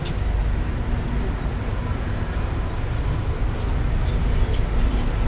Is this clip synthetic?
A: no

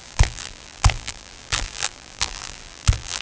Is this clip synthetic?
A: yes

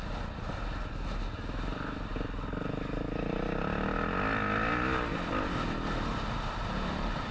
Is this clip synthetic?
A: no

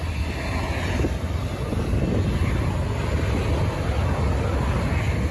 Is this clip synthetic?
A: no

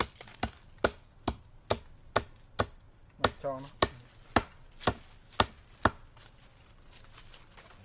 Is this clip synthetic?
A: no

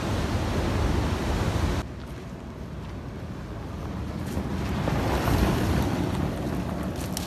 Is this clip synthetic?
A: no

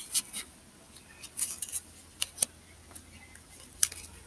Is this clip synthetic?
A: no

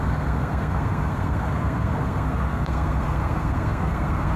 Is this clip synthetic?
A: yes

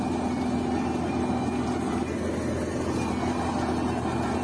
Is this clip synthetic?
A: no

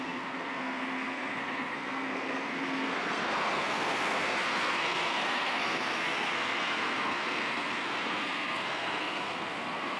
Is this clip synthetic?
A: yes